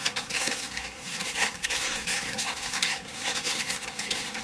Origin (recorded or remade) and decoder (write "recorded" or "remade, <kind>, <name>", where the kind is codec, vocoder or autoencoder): remade, codec, SNAC